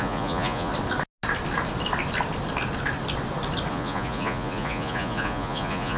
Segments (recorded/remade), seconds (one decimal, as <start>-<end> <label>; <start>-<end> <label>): 0.0-0.7 remade; 0.7-3.7 recorded; 3.7-6.0 remade